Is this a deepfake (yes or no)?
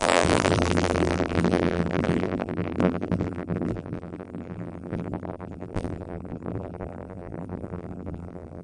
yes